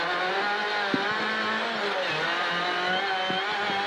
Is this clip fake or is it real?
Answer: real